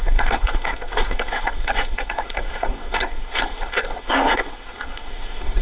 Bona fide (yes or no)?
no